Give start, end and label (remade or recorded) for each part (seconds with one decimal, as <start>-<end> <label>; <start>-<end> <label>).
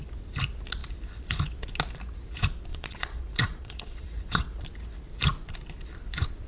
0.0-2.7 recorded; 2.7-4.6 remade; 4.6-6.5 recorded